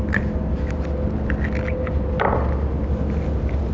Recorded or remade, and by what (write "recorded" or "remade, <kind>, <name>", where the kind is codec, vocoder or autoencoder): recorded